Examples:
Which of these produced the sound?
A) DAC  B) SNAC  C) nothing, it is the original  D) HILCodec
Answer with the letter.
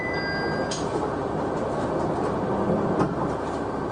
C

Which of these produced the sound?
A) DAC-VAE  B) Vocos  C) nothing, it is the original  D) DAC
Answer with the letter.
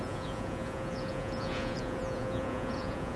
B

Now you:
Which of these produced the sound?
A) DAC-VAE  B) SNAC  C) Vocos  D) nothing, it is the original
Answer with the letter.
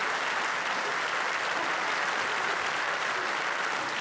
D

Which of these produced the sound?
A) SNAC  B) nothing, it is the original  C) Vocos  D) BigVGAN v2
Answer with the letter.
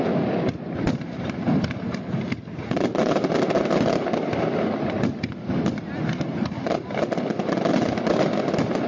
B